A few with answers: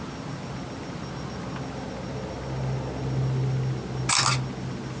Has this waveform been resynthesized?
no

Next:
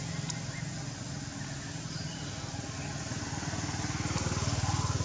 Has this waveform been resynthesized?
no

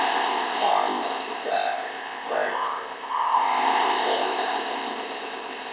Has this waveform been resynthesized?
yes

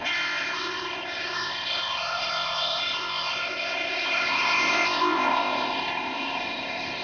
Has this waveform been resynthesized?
yes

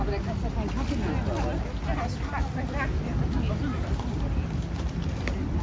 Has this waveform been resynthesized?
no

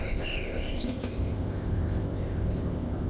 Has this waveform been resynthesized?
yes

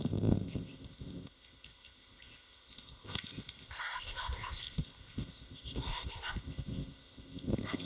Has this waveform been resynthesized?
yes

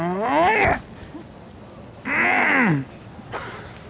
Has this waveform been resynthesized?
no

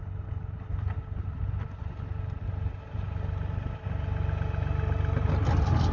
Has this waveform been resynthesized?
no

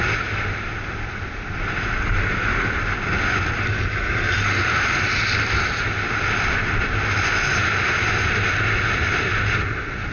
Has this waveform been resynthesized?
no